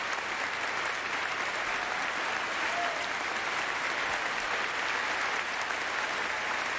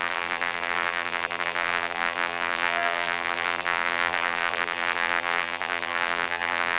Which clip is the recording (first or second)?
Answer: first